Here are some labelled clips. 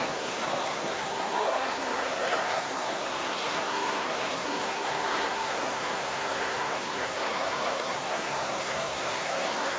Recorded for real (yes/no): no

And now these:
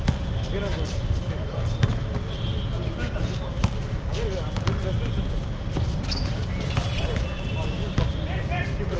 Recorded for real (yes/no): yes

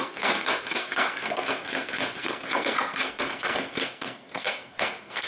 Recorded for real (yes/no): no